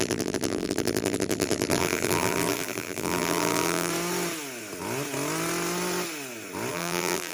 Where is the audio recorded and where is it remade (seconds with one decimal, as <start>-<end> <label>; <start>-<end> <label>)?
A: 0.0-3.9 remade; 3.9-6.7 recorded; 6.7-7.3 remade